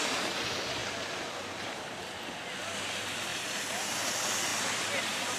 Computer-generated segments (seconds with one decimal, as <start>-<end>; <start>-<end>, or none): 0.8-2.1; 3.3-4.1; 4.5-5.4